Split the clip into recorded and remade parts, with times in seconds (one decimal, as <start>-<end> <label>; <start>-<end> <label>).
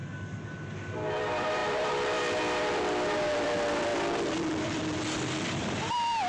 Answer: 0.0-1.1 recorded; 1.1-6.3 remade